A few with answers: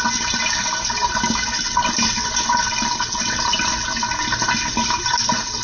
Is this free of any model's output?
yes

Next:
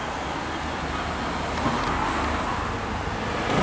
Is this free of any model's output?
yes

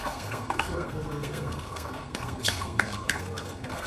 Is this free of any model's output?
no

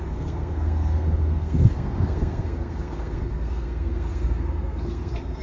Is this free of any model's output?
no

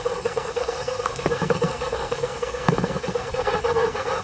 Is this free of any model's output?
no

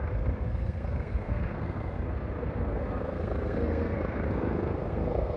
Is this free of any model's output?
no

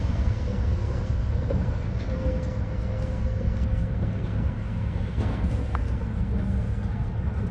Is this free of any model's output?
no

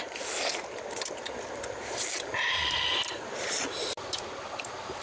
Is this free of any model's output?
yes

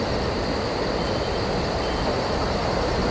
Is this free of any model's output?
yes